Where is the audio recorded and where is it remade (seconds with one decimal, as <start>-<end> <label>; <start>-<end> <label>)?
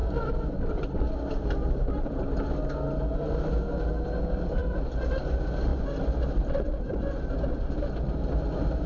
0.0-8.9 recorded